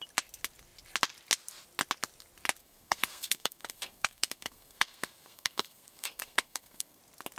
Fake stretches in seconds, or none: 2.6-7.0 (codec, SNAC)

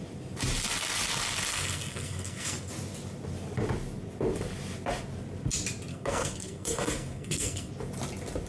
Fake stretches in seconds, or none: 1.5-2.7 (codec, SNAC); 5.9-7.7